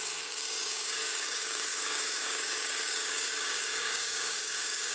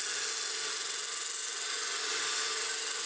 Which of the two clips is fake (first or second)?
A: first